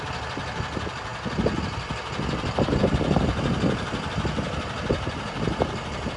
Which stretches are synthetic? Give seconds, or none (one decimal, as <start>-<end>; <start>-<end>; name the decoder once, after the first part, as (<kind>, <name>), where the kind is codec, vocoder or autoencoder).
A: none